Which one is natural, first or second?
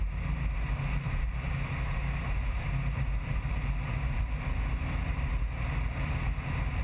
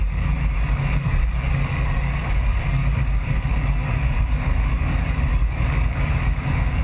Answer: first